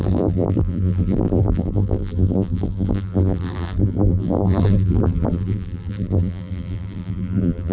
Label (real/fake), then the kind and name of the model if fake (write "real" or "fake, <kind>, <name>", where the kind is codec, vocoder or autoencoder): fake, vocoder, BigVGAN v2